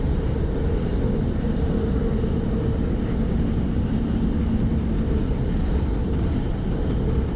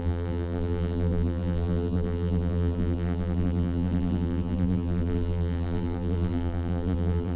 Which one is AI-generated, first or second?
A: second